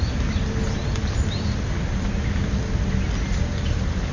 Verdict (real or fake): real